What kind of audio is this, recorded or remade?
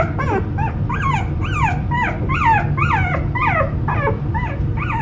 recorded